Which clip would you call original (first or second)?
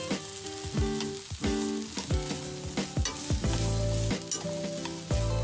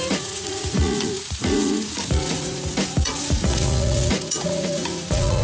first